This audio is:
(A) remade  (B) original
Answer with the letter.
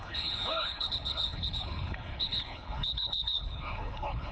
A